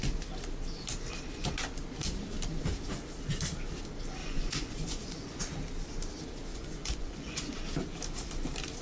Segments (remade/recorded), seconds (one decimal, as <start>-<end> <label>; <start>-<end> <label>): 0.0-4.2 recorded; 4.2-5.4 remade; 5.4-6.5 recorded; 6.5-7.5 remade; 7.5-8.8 recorded